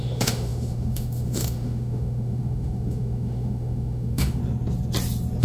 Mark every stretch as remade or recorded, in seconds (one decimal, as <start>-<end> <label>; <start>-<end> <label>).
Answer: 0.0-4.4 remade; 4.4-5.4 recorded